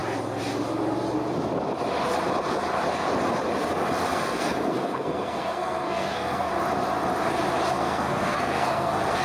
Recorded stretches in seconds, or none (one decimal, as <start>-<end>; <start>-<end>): 0.0-4.1; 6.5-7.7